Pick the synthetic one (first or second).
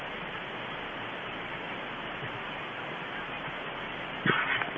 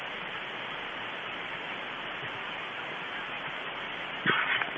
second